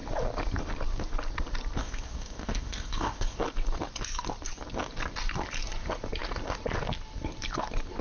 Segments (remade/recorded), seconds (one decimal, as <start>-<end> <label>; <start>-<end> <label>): 0.0-1.8 recorded; 1.8-3.4 remade; 3.4-8.0 recorded